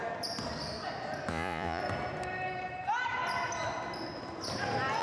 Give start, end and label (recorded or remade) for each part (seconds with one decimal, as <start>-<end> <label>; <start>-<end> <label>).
0.0-1.3 recorded; 1.3-1.8 remade; 1.8-5.0 recorded